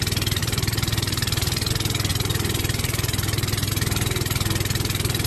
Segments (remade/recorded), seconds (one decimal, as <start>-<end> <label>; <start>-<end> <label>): 0.0-0.4 recorded; 0.4-1.7 remade; 1.7-2.1 recorded; 2.1-3.7 remade; 3.7-5.3 recorded